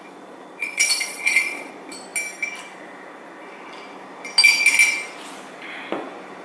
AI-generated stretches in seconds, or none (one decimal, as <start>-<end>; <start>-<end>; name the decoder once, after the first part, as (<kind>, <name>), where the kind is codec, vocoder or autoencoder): 0.6-1.7 (vocoder, Vocos)